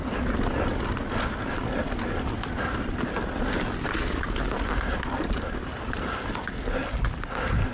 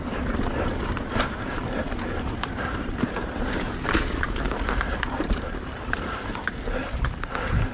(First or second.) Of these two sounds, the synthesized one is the second